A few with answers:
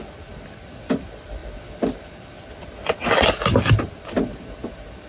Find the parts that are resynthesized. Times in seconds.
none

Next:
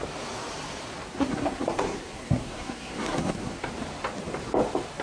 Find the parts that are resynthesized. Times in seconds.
1.1-3.7 (codec, SNAC)

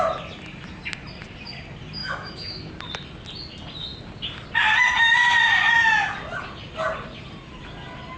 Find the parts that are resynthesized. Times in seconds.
2.0-2.7 (autoencoder, DAC-VAE)

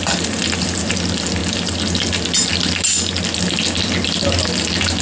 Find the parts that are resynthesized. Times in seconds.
none

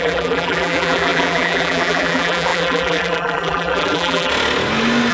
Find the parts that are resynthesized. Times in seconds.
0.0-4.3 (vocoder, BigVGAN v2)